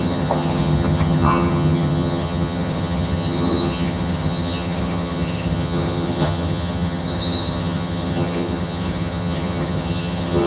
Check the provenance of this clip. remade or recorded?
remade